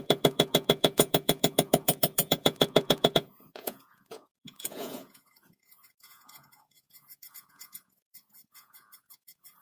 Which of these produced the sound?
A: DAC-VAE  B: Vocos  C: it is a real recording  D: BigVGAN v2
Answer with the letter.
B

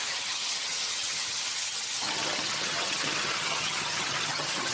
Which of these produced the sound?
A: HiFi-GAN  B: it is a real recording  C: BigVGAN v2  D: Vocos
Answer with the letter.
A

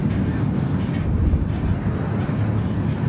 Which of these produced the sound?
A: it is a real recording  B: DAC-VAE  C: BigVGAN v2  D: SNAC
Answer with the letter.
A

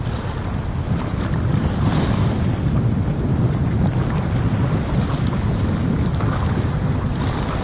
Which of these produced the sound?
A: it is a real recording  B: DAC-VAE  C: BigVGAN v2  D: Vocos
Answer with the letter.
A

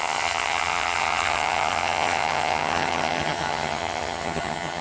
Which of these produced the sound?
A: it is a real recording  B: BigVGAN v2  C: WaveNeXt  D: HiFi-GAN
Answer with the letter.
D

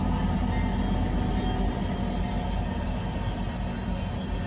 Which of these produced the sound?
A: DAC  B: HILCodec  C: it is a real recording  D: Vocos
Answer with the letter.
C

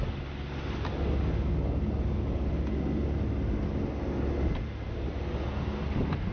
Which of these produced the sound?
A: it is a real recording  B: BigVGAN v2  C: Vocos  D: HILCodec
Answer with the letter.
A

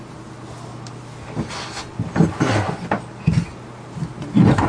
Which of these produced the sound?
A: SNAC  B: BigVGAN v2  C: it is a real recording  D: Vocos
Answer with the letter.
C